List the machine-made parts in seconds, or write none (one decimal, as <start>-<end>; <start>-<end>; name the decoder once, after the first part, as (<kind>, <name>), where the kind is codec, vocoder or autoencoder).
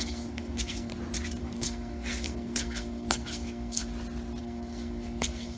0.0-0.9 (codec, SNAC); 1.4-3.8; 4.4-5.6